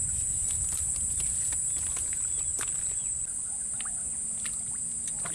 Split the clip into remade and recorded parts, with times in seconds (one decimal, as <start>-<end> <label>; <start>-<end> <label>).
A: 0.0-5.3 recorded

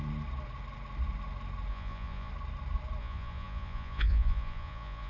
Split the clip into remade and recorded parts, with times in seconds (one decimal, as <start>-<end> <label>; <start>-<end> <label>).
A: 0.0-1.7 recorded; 1.7-2.3 remade; 2.3-3.0 recorded; 3.0-5.1 remade